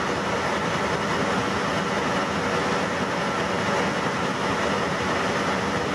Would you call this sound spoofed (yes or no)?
no